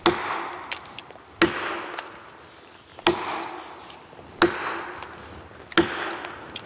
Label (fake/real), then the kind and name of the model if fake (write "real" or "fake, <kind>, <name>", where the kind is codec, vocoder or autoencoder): real